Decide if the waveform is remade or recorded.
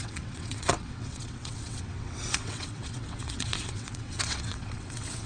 remade